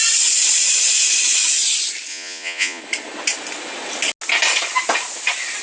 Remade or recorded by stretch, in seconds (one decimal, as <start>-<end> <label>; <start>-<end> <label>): 0.0-2.1 recorded; 2.1-2.8 remade; 2.8-5.6 recorded